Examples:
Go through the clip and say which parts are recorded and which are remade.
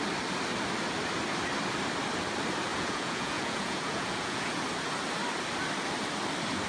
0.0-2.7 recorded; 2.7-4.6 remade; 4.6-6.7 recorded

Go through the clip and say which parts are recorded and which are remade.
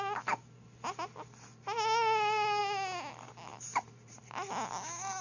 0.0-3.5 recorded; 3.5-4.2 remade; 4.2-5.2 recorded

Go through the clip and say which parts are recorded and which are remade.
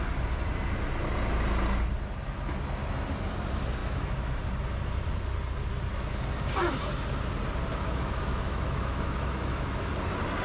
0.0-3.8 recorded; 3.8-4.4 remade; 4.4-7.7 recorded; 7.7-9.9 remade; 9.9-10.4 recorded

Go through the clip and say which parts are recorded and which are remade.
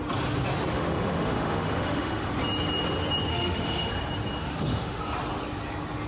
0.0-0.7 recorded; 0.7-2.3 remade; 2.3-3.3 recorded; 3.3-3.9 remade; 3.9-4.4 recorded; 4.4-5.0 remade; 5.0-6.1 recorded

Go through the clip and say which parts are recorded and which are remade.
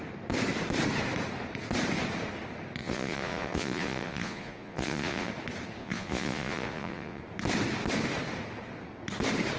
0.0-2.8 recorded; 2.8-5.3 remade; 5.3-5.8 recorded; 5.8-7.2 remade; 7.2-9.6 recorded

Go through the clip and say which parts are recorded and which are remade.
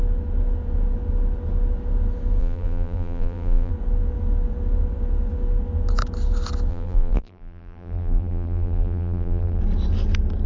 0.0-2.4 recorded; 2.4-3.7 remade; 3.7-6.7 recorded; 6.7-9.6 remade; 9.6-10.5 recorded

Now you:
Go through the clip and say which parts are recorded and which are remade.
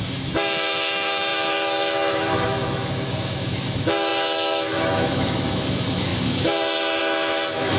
0.0-7.8 remade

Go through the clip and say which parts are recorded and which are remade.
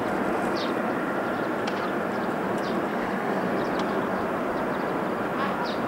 0.0-2.9 recorded; 2.9-3.5 remade; 3.5-5.9 recorded